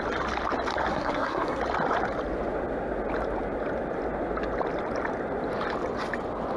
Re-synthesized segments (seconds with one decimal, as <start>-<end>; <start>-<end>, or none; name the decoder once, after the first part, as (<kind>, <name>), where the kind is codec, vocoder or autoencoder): 0.9-1.6 (codec, SNAC)